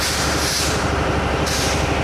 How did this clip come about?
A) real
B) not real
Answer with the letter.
A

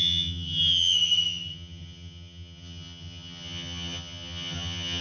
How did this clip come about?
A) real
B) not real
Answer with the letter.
B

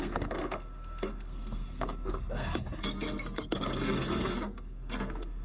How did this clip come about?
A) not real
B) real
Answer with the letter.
A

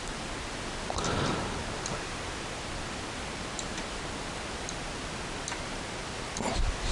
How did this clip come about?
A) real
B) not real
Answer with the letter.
A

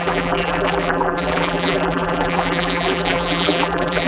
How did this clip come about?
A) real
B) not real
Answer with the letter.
B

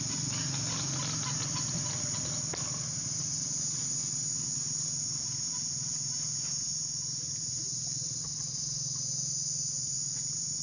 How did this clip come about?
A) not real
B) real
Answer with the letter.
B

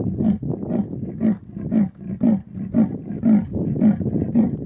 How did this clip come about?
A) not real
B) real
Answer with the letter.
B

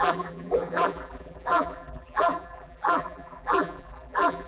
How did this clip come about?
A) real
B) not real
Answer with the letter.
B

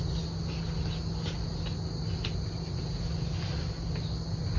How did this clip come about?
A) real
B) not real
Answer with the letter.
A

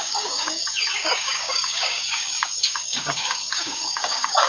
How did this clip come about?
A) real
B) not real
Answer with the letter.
B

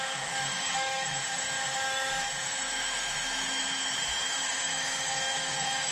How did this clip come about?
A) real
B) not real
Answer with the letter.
B